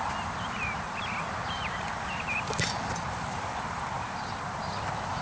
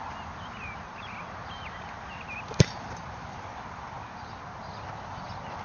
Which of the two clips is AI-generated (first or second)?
first